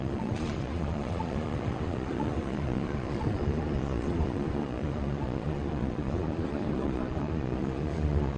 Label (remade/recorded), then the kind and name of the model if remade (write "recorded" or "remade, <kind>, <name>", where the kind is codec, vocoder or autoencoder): remade, vocoder, Vocos